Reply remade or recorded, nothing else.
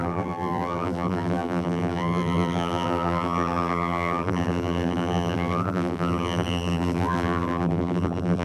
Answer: remade